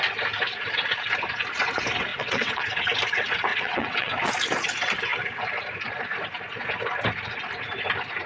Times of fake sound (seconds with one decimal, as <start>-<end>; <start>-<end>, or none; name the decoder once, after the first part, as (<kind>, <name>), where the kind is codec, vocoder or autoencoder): 2.1-2.6 (vocoder, WaveNeXt); 3.5-4.1